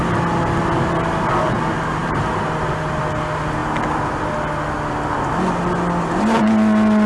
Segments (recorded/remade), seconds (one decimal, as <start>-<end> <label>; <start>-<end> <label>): 0.0-7.1 recorded